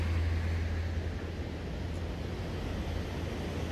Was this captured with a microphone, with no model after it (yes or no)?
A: yes